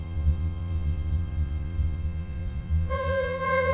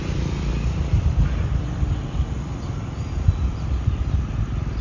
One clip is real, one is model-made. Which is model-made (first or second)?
first